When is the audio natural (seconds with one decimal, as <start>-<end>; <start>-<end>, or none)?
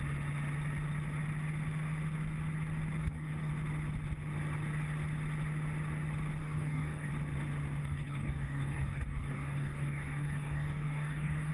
0.0-3.0; 3.5-6.4; 7.1-7.8